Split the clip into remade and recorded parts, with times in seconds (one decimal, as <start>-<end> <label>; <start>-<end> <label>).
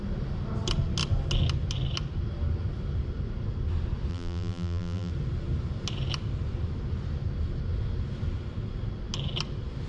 0.0-4.1 recorded; 4.1-5.1 remade; 5.1-9.9 recorded